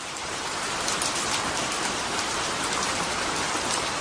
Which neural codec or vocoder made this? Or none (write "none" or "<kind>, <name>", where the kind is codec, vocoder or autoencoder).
none